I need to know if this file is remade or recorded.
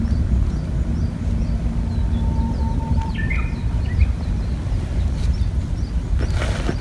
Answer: recorded